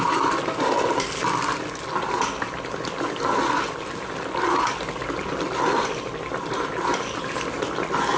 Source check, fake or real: real